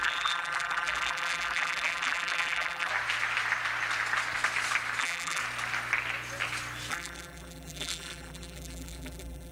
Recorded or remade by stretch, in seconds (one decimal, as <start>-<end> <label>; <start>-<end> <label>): 0.0-2.9 remade; 2.9-5.0 recorded; 5.0-5.4 remade; 5.4-6.9 recorded; 6.9-9.5 remade